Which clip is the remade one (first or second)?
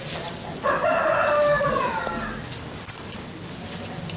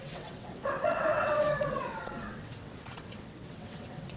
second